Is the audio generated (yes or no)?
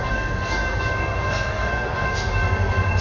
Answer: yes